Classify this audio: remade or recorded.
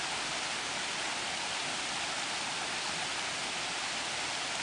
recorded